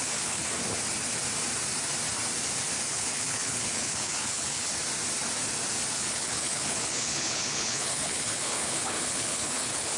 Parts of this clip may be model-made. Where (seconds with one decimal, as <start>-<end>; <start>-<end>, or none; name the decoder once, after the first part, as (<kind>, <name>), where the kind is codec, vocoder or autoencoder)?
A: 0.0-0.4 (codec, HILCodec); 2.9-4.7; 5.9-10.0